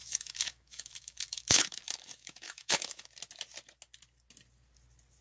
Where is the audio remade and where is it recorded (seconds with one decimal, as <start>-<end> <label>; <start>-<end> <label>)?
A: 0.0-3.1 remade; 3.1-5.2 recorded